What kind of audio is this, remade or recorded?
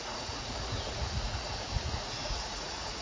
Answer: remade